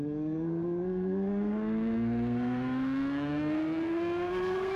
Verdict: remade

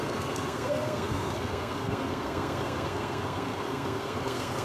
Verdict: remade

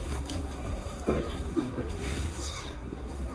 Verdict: remade